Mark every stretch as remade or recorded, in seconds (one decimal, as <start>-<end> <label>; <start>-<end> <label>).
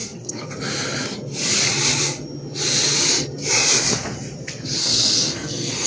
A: 0.0-0.5 remade; 0.5-4.8 recorded; 4.8-5.9 remade